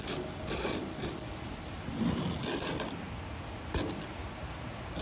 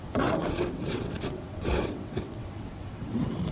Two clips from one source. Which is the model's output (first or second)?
second